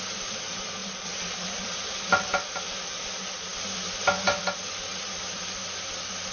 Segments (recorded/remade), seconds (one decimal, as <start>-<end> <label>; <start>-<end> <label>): 0.0-0.8 recorded; 0.8-3.0 remade; 3.0-4.9 recorded; 4.9-5.6 remade; 5.6-6.3 recorded